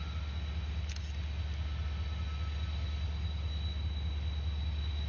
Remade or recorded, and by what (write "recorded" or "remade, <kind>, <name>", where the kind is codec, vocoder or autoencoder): recorded